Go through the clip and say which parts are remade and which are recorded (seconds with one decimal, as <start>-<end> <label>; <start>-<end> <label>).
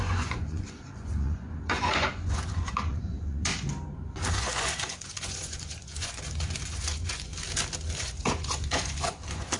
0.0-3.5 remade; 3.5-4.3 recorded; 4.3-7.3 remade; 7.3-8.0 recorded; 8.0-9.6 remade